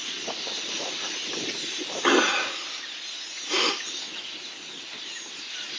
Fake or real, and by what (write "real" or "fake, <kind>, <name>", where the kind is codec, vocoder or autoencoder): real